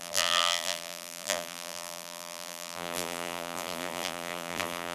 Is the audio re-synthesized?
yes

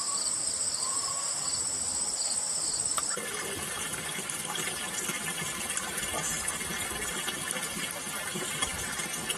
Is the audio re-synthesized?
yes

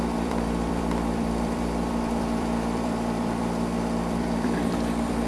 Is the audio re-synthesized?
yes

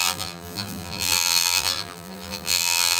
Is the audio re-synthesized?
yes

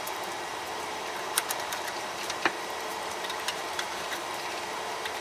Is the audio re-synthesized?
yes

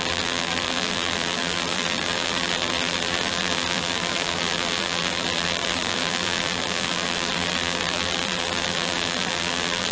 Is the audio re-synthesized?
yes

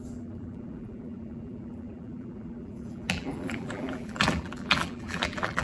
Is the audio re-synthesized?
yes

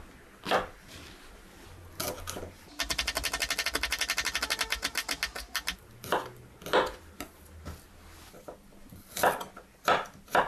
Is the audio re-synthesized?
no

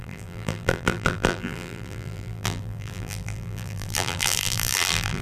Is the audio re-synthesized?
yes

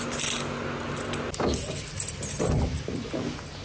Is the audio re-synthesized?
no